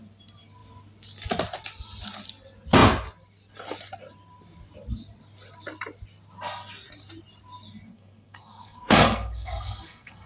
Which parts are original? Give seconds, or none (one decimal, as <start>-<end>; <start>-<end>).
0.0-7.9